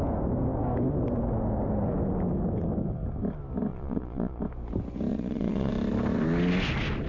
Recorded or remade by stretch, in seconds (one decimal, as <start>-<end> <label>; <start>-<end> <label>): 0.0-3.7 recorded; 3.7-4.4 remade; 4.4-5.1 recorded; 5.1-5.7 remade; 5.7-7.1 recorded

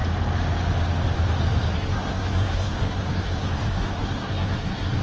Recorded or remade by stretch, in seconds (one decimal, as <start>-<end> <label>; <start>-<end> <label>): 0.0-1.7 recorded; 1.7-5.0 remade

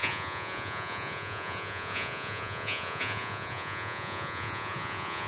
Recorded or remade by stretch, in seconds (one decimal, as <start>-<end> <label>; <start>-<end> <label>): 0.0-5.3 remade

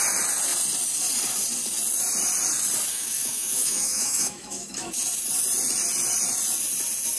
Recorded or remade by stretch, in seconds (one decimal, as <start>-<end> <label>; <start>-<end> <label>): 0.0-2.9 recorded; 2.9-4.9 remade; 4.9-7.2 recorded

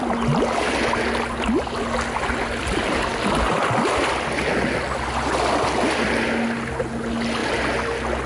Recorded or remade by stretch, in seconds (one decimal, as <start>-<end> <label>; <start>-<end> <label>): 0.0-8.3 recorded